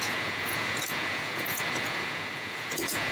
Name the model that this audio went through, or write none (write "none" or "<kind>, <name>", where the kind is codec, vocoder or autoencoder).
vocoder, Vocos